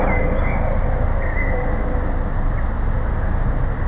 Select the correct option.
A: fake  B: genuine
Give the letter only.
B